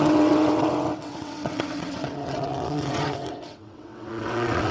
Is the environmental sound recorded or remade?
remade